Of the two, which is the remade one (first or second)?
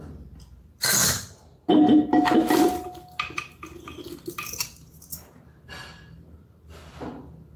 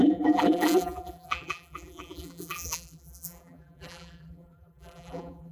second